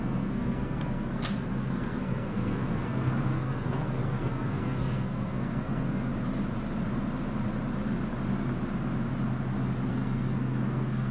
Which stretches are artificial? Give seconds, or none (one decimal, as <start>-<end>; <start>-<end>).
0.0-6.1; 9.9-11.1